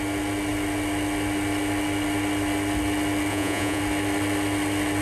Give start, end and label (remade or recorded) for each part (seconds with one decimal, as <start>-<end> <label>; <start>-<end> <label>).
0.0-3.3 recorded; 3.3-3.8 remade; 3.8-5.0 recorded